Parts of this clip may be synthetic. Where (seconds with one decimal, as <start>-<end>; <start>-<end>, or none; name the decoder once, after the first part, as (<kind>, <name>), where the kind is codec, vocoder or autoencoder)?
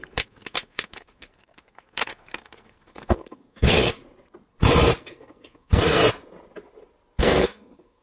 0.0-4.0 (codec, SNAC); 5.0-6.0; 7.2-8.0